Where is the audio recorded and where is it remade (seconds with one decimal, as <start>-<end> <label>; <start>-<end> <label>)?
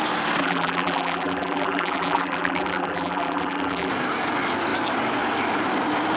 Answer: 0.0-0.4 recorded; 0.4-3.9 remade; 3.9-6.2 recorded